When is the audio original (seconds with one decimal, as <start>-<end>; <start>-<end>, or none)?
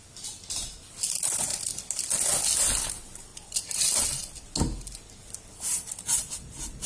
0.0-6.9